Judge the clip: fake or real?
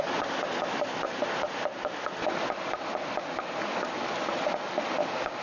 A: real